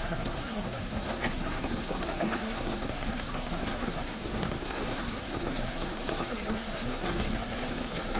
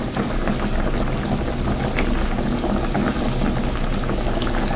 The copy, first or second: first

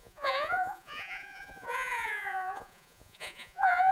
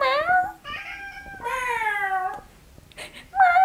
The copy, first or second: first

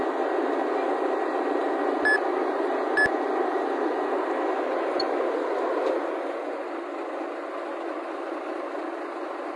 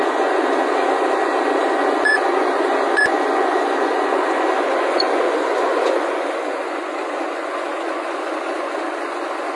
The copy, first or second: second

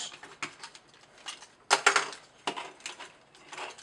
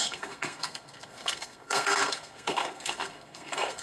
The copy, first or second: second